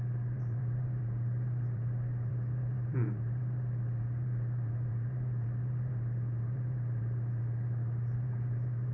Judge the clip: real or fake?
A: fake